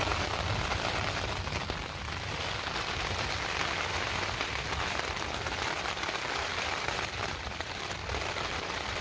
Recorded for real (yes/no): no